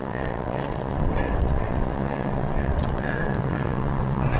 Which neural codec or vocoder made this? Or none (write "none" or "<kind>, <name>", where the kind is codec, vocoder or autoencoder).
vocoder, WaveNeXt